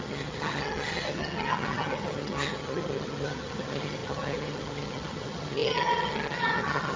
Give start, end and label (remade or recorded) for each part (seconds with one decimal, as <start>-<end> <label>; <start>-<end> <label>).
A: 0.0-7.0 remade